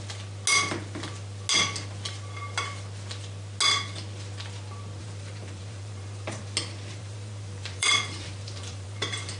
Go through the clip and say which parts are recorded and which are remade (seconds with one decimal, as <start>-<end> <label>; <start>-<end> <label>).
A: 0.0-5.0 recorded; 5.0-6.4 remade; 6.4-6.9 recorded; 6.9-9.4 remade